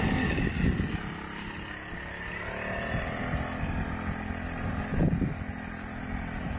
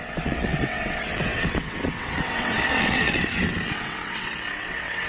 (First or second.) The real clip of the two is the first